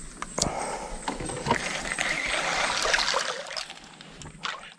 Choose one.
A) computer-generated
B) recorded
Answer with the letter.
B